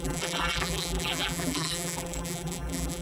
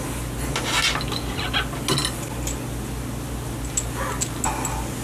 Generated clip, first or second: first